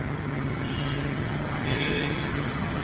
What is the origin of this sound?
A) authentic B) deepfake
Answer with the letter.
B